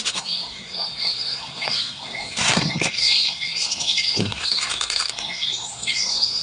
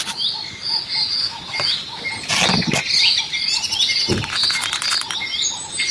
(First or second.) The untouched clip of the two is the second